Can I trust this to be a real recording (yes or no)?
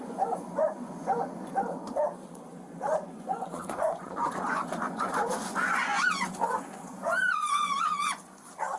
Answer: no